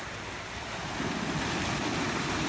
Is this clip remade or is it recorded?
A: recorded